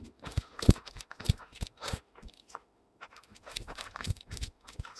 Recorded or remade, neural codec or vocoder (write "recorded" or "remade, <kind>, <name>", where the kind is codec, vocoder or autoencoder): remade, autoencoder, DAC-VAE